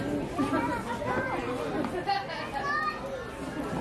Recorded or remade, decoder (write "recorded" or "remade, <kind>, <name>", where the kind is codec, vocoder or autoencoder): recorded